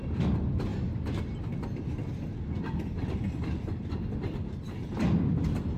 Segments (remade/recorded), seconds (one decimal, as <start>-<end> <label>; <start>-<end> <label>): 0.0-5.8 recorded

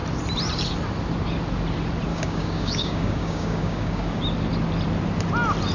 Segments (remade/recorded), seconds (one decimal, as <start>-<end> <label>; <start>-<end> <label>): 0.0-2.1 recorded; 2.1-4.2 remade; 4.2-5.7 recorded

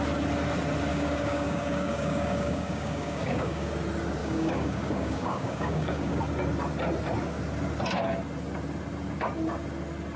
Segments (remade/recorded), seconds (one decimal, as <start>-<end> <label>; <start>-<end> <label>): 0.0-0.9 recorded; 0.9-3.7 remade; 3.7-4.2 recorded; 4.2-6.2 remade; 6.2-10.2 recorded

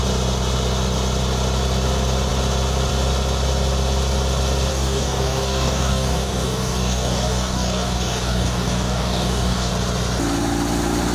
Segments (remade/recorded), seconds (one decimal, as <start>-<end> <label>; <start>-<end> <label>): 0.0-4.7 recorded; 4.7-9.7 remade; 9.7-11.1 recorded

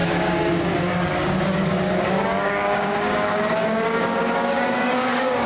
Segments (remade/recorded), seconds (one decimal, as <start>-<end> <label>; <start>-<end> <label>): 0.0-5.5 remade

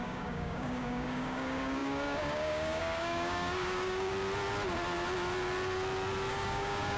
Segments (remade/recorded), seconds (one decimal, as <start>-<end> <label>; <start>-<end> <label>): 0.0-4.1 remade; 4.1-6.3 recorded; 6.3-7.0 remade

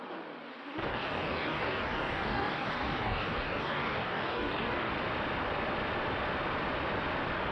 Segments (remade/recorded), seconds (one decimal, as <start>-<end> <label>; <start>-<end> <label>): 0.0-0.9 recorded; 0.9-4.9 remade; 4.9-7.5 recorded

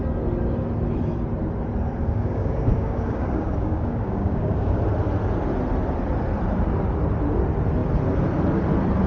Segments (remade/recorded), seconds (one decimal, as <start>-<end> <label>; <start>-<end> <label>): 0.0-2.0 recorded; 2.0-4.8 remade; 4.8-9.1 recorded